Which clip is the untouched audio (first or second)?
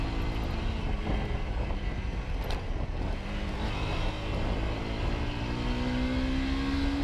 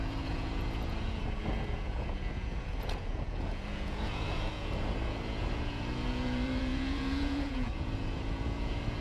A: first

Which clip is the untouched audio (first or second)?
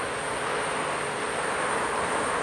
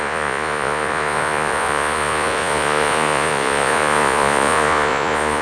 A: first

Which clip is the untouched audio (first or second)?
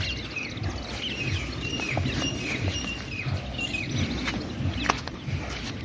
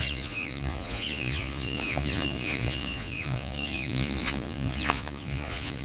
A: first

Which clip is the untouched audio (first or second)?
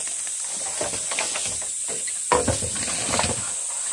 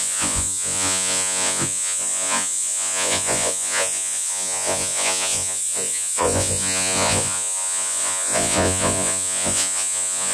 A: first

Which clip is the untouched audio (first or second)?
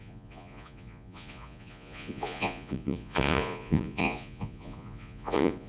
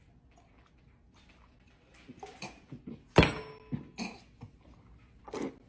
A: second